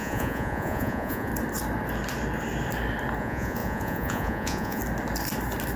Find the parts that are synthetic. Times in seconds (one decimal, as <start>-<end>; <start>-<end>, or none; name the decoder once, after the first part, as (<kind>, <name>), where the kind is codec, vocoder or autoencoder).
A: 0.0-1.3 (vocoder, Vocos); 3.2-4.8